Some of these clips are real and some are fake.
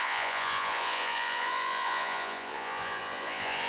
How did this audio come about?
fake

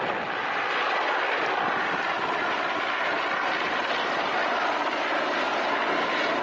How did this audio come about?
real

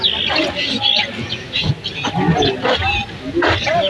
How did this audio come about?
real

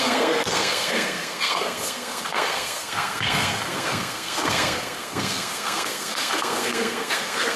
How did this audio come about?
fake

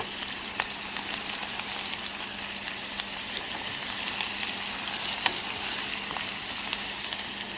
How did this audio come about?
real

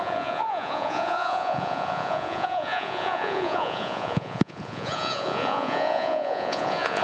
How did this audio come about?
fake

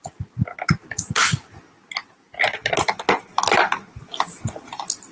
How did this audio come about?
real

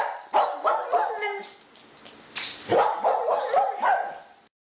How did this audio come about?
real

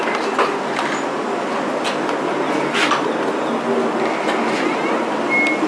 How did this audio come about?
real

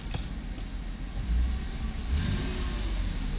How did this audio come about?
real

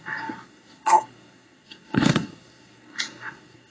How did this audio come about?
fake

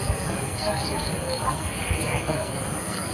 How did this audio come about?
fake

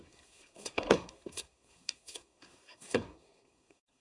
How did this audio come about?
fake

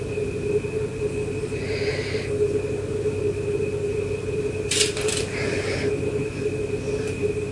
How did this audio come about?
real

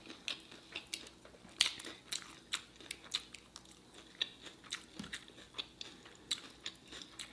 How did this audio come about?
real